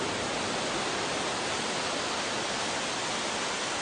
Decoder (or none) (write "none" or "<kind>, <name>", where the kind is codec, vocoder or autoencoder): none